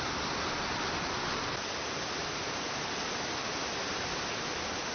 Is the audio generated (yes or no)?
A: no